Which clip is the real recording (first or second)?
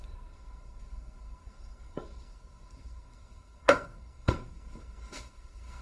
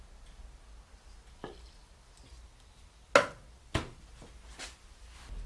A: second